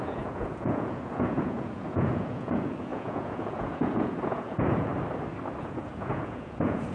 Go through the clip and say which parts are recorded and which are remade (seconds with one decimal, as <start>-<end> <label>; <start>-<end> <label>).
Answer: 0.0-4.9 remade; 4.9-5.6 recorded; 5.6-6.9 remade